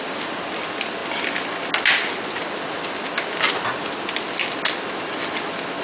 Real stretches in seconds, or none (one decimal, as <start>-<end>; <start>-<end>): 0.0-5.8